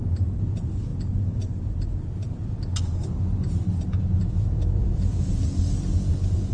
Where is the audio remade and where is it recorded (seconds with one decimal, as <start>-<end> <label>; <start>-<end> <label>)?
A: 0.0-0.9 remade; 0.9-3.7 recorded; 3.7-5.6 remade; 5.6-6.1 recorded; 6.1-6.5 remade